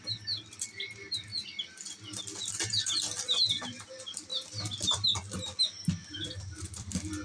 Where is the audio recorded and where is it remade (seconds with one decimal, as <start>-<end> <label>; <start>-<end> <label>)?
0.0-1.3 remade; 1.3-3.5 recorded; 3.5-4.3 remade; 4.3-6.1 recorded; 6.1-7.2 remade